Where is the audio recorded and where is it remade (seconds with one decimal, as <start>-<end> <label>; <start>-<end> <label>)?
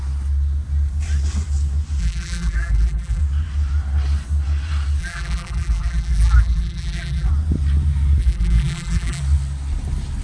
0.0-2.0 recorded; 2.0-3.2 remade; 3.2-5.0 recorded; 5.0-7.3 remade; 7.3-8.2 recorded; 8.2-9.2 remade; 9.2-10.2 recorded